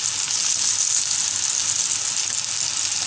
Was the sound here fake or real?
real